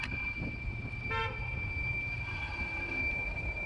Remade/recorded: recorded